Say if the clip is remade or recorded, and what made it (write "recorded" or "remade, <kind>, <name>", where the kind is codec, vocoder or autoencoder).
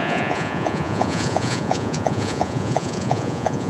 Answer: remade, vocoder, Vocos